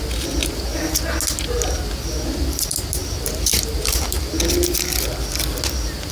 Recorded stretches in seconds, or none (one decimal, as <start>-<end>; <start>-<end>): 0.0-6.1